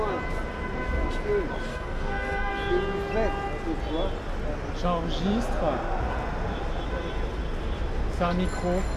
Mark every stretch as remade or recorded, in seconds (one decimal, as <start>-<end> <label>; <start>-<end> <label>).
0.0-1.7 recorded; 1.7-2.5 remade; 2.5-9.0 recorded